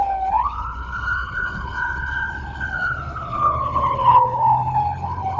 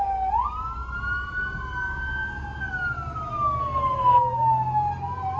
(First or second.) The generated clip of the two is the first